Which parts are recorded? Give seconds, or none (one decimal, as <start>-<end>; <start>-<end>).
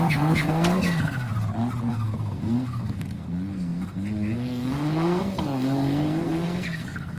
1.3-1.9